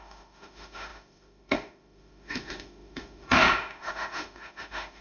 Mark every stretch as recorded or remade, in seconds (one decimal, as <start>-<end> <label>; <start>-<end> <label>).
0.0-5.0 remade